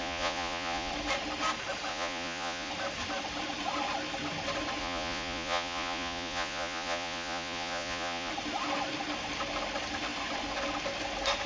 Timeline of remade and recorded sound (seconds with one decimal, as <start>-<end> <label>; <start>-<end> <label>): 0.0-0.9 remade; 0.9-1.9 recorded; 1.9-2.7 remade; 2.7-4.8 recorded; 4.8-8.3 remade; 8.3-11.5 recorded